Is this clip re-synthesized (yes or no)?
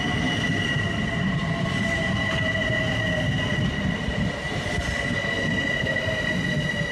no